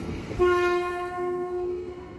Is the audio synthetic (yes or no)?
yes